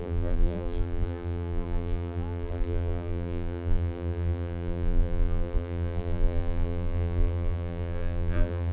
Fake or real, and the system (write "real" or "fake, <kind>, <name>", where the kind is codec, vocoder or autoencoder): fake, vocoder, BigVGAN v2